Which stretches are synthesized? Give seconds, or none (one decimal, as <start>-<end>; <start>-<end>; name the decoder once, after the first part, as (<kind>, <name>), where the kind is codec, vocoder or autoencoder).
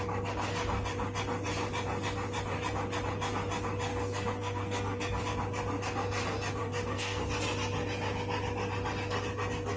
3.9-5.2 (codec, SNAC); 6.6-7.2